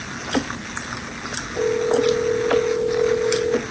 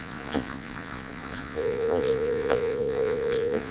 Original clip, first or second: first